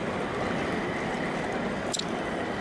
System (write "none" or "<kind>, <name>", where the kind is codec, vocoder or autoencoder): none